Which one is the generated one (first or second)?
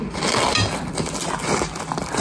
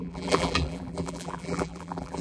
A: second